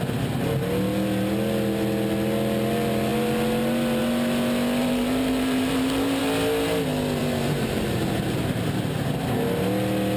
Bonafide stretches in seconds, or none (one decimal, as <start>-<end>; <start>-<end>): 0.0-4.8; 6.2-7.2; 8.1-10.2

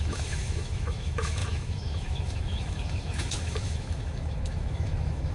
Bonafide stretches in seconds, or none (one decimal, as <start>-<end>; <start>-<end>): none